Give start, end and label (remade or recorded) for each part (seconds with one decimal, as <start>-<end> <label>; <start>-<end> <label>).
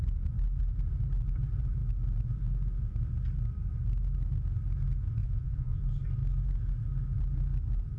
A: 0.0-5.2 recorded; 5.2-5.8 remade; 5.8-8.0 recorded